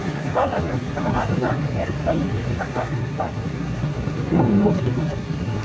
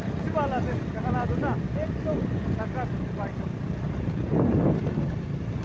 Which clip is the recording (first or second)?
second